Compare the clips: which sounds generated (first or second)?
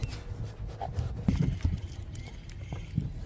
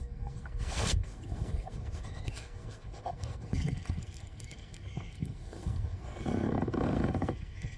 second